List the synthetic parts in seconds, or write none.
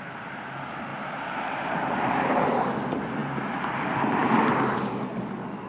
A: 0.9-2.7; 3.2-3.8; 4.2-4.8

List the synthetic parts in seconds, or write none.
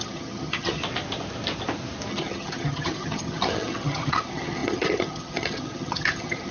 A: 0.0-0.8; 2.1-6.5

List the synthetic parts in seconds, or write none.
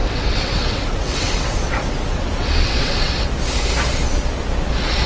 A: 0.0-3.1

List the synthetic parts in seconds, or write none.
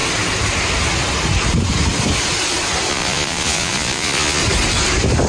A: 2.9-4.4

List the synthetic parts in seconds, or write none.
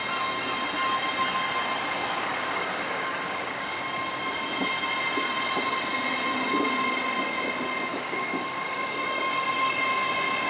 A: 2.0-3.8; 7.9-9.5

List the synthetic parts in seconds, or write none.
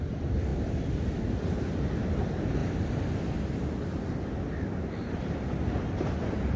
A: none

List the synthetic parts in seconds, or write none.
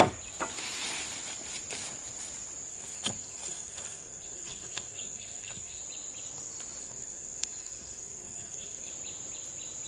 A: 2.7-5.8; 6.8-8.9